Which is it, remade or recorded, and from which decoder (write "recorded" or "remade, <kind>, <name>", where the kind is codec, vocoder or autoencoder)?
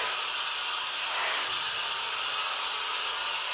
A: recorded